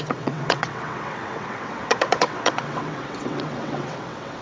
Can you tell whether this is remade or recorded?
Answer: remade